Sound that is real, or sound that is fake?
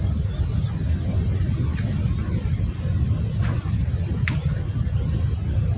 real